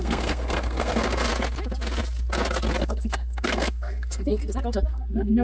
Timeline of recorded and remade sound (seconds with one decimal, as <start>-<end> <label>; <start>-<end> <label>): 0.0-1.3 remade; 1.3-2.8 recorded; 2.8-4.4 remade; 4.4-4.9 recorded; 4.9-5.4 remade